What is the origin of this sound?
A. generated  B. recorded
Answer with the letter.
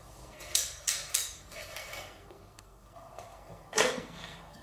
A